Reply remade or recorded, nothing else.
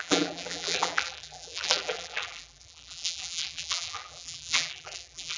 remade